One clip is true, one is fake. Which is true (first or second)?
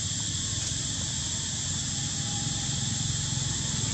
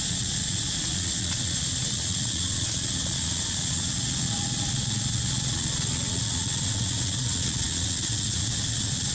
first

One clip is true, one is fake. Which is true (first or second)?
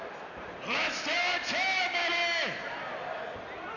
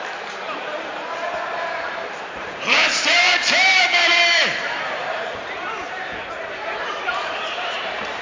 first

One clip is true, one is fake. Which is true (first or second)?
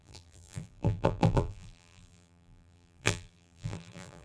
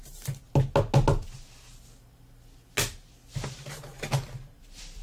second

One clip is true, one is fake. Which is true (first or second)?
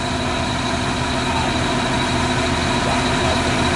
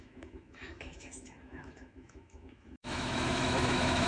first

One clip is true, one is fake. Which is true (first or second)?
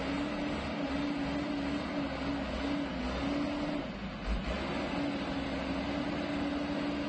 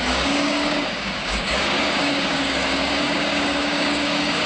first